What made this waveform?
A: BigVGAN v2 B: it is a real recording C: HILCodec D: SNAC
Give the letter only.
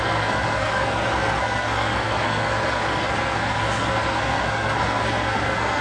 D